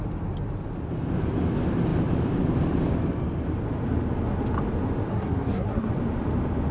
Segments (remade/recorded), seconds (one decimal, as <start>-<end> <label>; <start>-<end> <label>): 0.0-5.1 recorded; 5.1-5.9 remade; 5.9-6.7 recorded